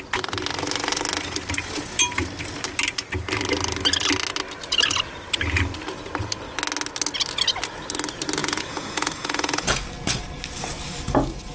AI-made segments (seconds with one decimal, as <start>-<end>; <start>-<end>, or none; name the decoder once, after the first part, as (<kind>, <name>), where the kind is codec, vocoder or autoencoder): 8.4-9.9 (vocoder, Vocos)